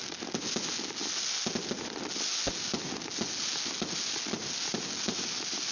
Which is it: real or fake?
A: real